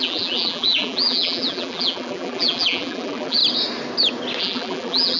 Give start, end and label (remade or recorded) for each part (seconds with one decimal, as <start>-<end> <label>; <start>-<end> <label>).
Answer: 0.0-3.4 remade; 3.4-4.4 recorded; 4.4-5.2 remade